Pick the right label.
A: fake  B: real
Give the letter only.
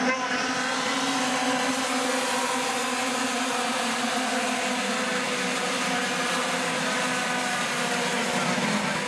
B